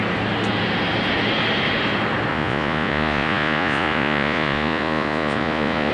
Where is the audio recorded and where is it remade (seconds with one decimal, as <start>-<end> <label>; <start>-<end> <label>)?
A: 0.0-2.3 recorded; 2.3-5.9 remade